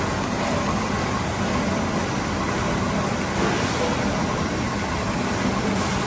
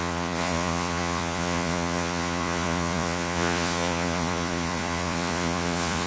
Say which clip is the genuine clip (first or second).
first